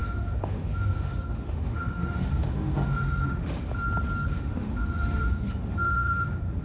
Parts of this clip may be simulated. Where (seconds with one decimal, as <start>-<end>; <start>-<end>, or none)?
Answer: 0.0-3.6; 4.3-6.6